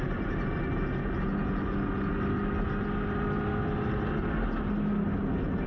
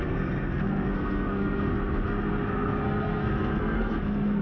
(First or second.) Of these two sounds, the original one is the first